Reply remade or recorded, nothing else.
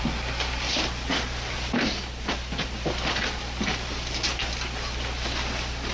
recorded